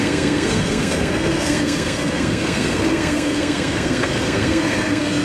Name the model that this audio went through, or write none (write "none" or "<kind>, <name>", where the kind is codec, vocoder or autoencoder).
codec, SNAC